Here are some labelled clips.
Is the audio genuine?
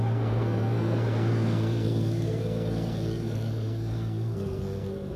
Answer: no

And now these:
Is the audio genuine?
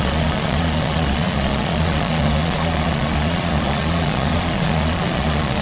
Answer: no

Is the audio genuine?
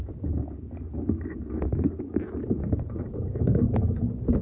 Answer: yes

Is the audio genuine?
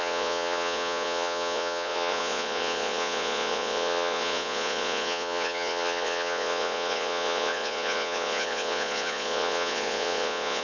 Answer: no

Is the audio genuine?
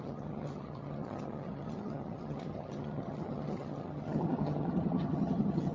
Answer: no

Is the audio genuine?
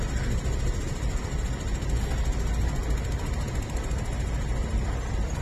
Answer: yes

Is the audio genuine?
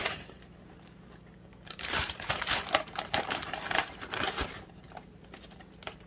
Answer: no